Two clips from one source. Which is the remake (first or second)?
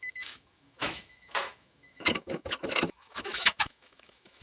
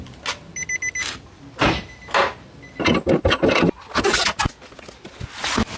first